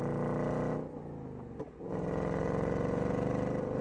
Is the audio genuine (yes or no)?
yes